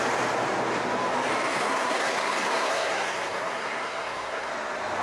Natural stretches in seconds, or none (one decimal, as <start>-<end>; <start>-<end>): 0.0-1.5; 4.5-5.0